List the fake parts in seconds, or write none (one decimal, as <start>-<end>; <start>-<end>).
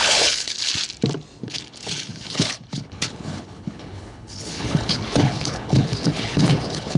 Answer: 0.0-0.7; 1.4-7.0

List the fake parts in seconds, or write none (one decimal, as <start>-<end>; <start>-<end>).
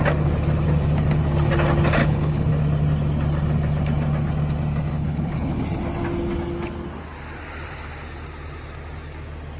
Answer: 2.0-2.5; 4.9-5.6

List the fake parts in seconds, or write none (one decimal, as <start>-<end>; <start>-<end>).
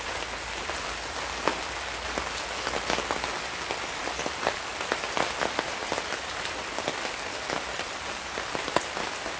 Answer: none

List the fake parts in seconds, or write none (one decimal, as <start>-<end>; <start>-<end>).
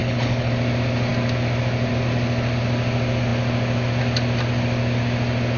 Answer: 0.0-0.5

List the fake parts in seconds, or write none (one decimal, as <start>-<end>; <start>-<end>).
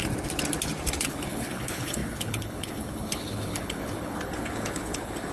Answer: 1.0-5.3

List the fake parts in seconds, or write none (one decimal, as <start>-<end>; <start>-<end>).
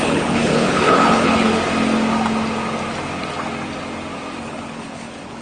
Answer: 0.0-1.5; 4.4-5.4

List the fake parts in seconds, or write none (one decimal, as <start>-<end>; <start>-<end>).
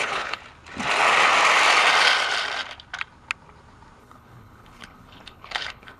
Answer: 0.0-0.4; 4.0-6.0